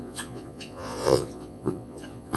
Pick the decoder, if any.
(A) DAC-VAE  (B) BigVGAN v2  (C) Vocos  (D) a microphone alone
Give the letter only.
C